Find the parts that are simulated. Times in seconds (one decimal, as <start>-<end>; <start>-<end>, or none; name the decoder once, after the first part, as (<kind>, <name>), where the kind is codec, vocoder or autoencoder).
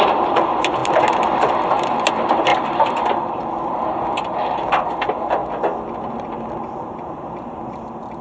none